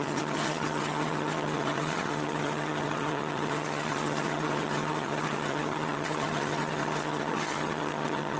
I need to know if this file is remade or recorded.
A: remade